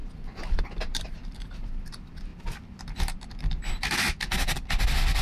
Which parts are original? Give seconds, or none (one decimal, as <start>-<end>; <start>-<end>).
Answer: 0.0-0.6